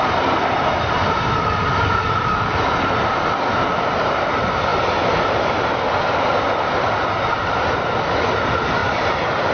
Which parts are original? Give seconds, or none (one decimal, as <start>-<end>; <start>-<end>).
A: 0.0-4.7; 8.3-8.8